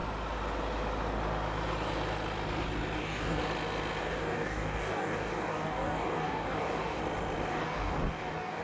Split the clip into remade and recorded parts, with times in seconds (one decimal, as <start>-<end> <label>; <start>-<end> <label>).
0.0-3.0 recorded; 3.0-3.4 remade; 3.4-4.0 recorded; 4.0-7.0 remade; 7.0-7.5 recorded; 7.5-8.6 remade